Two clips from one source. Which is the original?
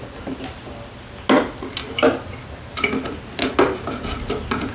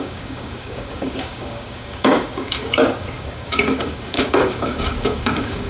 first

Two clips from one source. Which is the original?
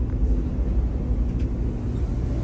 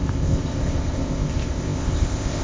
first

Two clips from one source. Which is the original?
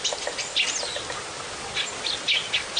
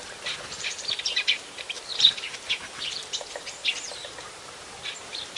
first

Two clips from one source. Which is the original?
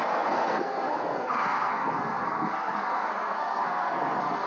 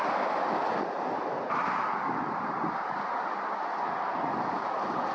second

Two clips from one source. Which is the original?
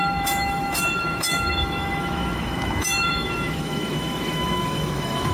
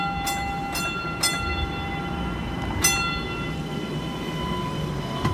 second